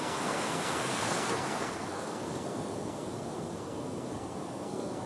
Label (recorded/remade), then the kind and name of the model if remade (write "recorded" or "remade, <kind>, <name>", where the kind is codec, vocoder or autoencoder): remade, codec, SNAC